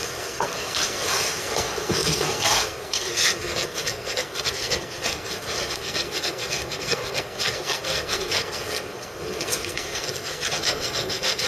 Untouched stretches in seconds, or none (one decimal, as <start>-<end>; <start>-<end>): none